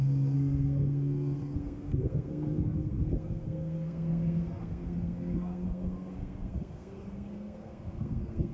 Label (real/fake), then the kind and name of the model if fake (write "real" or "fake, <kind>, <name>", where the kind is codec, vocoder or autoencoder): fake, codec, SNAC